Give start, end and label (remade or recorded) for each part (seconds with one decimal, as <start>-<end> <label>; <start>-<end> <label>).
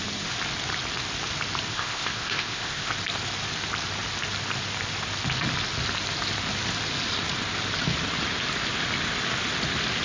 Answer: 0.0-1.7 recorded; 1.7-2.9 remade; 2.9-10.0 recorded